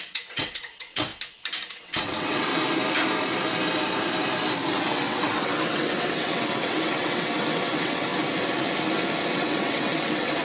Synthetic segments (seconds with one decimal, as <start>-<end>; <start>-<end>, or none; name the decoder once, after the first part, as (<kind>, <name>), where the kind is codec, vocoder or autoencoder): 0.0-1.1 (vocoder, WaveNeXt); 1.7-2.5; 4.8-8.1; 9.3-10.4